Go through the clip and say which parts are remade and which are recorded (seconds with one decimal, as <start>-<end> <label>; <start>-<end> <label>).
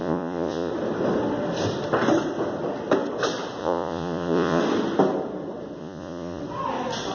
0.0-0.7 remade; 0.7-3.6 recorded; 3.6-4.6 remade; 4.6-5.8 recorded; 5.8-6.4 remade; 6.4-7.1 recorded